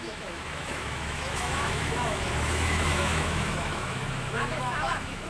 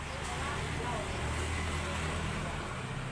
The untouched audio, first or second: second